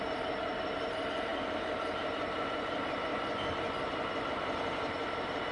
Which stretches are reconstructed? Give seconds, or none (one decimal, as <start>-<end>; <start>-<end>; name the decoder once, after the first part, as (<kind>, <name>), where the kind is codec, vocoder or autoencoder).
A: 0.0-3.1 (vocoder, BigVGAN v2); 4.3-5.5